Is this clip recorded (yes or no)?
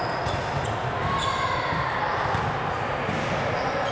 yes